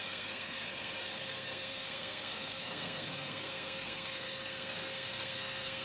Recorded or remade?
remade